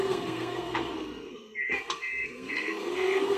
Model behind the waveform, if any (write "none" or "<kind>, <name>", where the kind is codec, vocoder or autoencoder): codec, SNAC